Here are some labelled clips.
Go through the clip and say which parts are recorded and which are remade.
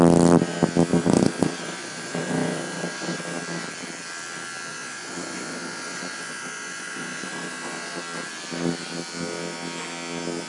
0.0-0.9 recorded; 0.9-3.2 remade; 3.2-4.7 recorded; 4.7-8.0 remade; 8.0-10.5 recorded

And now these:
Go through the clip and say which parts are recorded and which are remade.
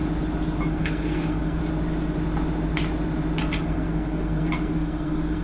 0.0-0.7 recorded; 0.7-1.6 remade; 1.6-3.6 recorded; 3.6-5.4 remade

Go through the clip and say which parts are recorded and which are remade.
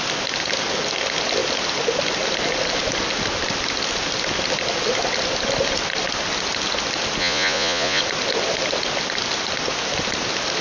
0.0-7.2 recorded; 7.2-8.0 remade; 8.0-10.6 recorded